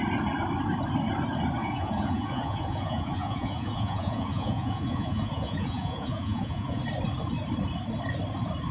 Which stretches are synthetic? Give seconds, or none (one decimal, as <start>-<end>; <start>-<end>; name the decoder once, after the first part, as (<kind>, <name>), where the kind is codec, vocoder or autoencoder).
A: 1.6-6.8 (vocoder, Vocos)